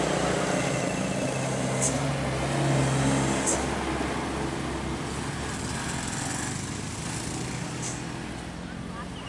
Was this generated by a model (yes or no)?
no